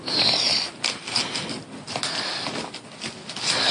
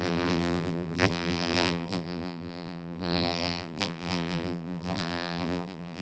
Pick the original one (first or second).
first